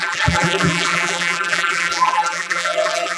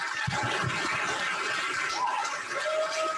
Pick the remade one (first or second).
first